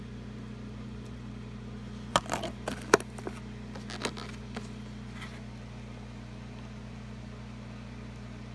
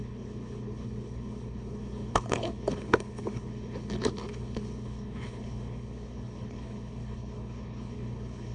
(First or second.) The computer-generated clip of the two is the second